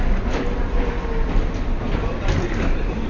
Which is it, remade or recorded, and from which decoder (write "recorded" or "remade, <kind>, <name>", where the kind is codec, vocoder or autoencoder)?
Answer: recorded